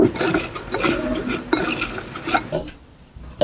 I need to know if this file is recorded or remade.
recorded